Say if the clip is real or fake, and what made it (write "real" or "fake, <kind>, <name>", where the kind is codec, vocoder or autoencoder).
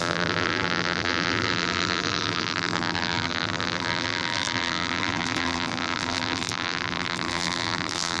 fake, vocoder, BigVGAN v2